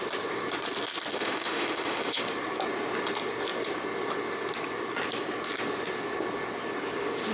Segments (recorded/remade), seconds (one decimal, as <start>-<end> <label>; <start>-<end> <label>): 0.0-1.1 recorded; 1.1-2.2 remade; 2.2-7.3 recorded